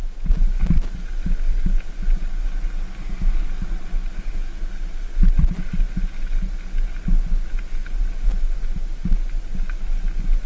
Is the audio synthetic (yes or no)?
no